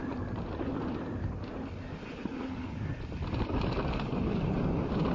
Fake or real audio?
fake